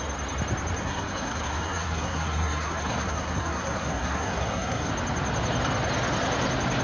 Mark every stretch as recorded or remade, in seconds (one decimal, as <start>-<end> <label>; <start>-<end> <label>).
0.0-0.8 recorded; 0.8-4.9 remade; 4.9-6.8 recorded